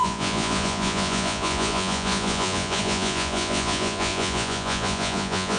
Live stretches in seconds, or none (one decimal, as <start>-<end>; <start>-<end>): none